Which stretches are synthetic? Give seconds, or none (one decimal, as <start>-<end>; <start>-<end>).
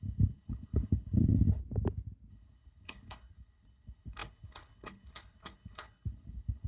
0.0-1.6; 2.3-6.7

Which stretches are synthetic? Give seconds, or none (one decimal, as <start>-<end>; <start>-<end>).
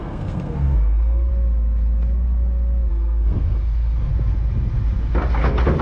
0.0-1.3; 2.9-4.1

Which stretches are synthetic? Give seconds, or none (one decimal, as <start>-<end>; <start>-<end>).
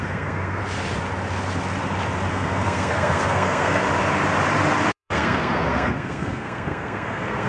0.0-0.6; 2.3-3.8; 4.9-7.5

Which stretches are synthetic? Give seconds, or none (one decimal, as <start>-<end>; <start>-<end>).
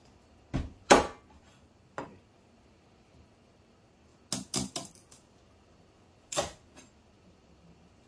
none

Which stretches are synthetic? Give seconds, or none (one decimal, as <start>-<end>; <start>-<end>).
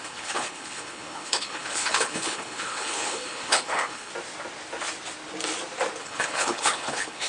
0.0-4.1; 6.0-7.3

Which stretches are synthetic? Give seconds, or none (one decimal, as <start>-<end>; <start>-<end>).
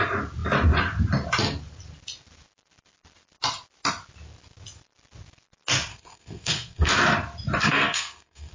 5.9-6.9; 7.6-8.5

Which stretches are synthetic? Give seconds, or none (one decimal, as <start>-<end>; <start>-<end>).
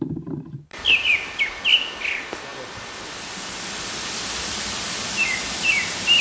none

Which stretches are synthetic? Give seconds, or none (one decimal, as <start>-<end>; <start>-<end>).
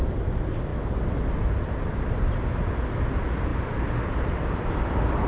none